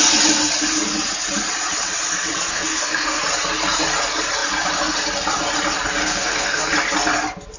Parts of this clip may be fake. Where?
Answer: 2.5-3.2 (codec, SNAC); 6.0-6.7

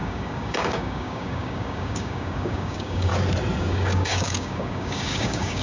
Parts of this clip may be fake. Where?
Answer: 0.0-3.1 (codec, DAC); 3.6-5.6

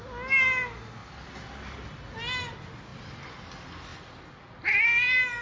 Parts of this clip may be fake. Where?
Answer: none

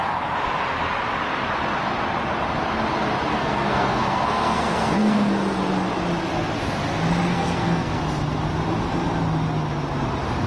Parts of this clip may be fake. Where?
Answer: 3.3-5.3 (codec, SNAC); 7.3-8.0

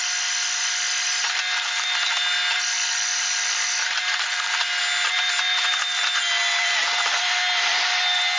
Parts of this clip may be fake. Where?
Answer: none

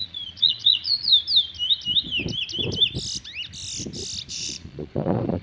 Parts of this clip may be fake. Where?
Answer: 0.0-1.1 (vocoder, Vocos); 4.3-5.4

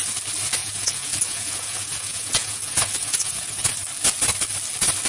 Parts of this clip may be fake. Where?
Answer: 0.6-3.7 (vocoder, Vocos)

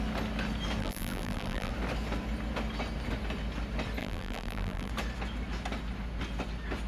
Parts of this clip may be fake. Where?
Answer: 0.8-1.7 (vocoder, BigVGAN v2); 4.0-4.9